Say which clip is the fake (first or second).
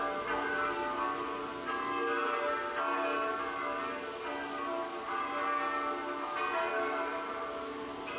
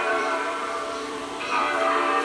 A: second